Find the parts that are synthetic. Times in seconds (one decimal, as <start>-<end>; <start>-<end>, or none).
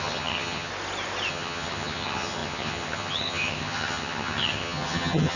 0.0-0.7; 1.3-5.4